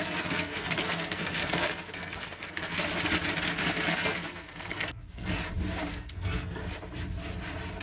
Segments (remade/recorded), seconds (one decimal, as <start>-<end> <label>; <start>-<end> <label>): 0.0-2.8 remade; 2.8-3.6 recorded; 3.6-5.4 remade; 5.4-5.9 recorded; 5.9-6.6 remade; 6.6-7.8 recorded

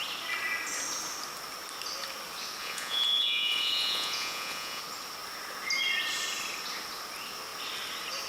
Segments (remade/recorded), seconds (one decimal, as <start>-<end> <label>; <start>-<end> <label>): 0.0-2.6 recorded; 2.6-4.8 remade; 4.8-8.3 recorded

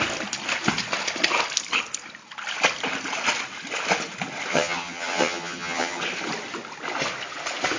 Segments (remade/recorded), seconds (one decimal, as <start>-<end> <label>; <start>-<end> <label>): 0.0-4.5 recorded; 4.5-6.0 remade; 6.0-7.8 recorded

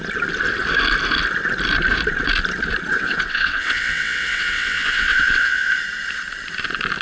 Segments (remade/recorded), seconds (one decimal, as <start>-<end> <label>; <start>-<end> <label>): 0.0-2.9 recorded; 2.9-5.7 remade; 5.7-7.0 recorded

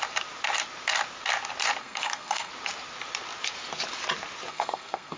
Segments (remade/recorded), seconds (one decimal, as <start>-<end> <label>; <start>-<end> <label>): 0.0-1.8 recorded; 1.8-2.5 remade; 2.5-4.5 recorded; 4.5-5.2 remade

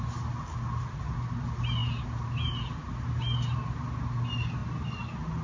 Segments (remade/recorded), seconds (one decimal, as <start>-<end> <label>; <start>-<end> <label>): 0.0-5.4 recorded